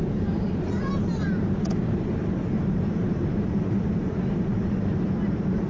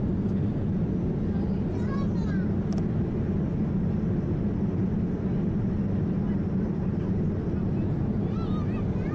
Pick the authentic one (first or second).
second